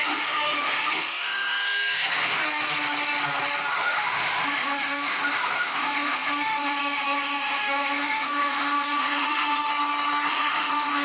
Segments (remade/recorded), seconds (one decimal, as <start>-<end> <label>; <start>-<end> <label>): 0.0-2.4 remade; 2.4-3.7 recorded; 3.7-9.7 remade; 9.7-10.3 recorded; 10.3-11.0 remade